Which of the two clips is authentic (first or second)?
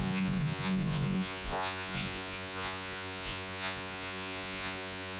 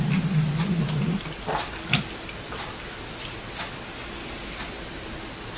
second